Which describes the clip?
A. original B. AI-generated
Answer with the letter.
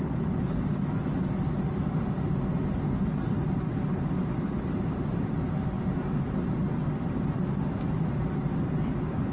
A